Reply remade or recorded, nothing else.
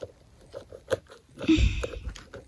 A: recorded